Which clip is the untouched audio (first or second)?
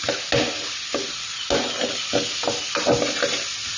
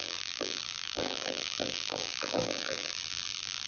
first